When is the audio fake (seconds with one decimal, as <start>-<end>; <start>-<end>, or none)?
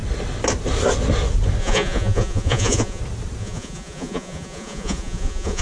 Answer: 1.6-3.0; 3.4-5.6